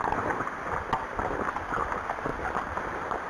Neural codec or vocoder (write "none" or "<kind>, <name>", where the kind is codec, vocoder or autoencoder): none